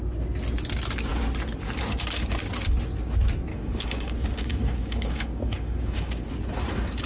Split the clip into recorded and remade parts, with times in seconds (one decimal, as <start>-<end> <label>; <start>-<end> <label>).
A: 0.0-3.5 recorded; 3.5-6.3 remade; 6.3-7.1 recorded